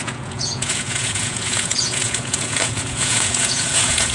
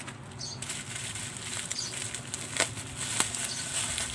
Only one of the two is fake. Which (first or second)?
first